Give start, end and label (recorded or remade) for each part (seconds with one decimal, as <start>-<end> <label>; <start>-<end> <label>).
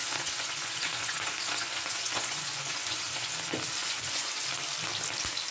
0.0-3.3 remade; 3.3-3.8 recorded; 3.8-4.5 remade; 4.5-5.5 recorded